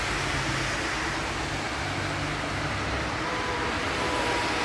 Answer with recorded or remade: recorded